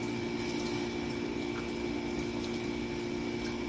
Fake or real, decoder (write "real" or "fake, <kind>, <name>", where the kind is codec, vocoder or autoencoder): real